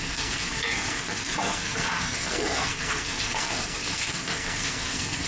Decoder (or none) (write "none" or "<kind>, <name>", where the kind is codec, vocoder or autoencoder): codec, SNAC